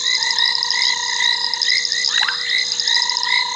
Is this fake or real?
real